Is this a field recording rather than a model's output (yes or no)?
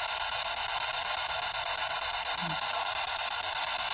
yes